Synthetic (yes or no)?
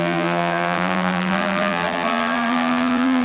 yes